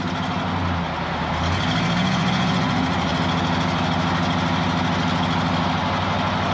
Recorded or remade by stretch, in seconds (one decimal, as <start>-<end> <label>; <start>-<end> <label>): 0.0-2.0 recorded; 2.0-3.2 remade; 3.2-6.5 recorded